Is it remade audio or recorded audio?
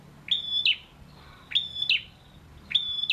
recorded